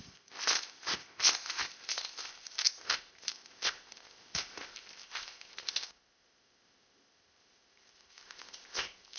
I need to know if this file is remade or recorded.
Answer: remade